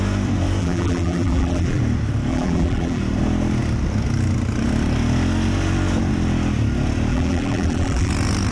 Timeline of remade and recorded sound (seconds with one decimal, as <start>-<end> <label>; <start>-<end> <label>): 0.0-0.6 recorded; 0.6-1.8 remade; 1.8-2.3 recorded; 2.3-3.0 remade; 3.0-7.1 recorded; 7.1-8.1 remade; 8.1-8.5 recorded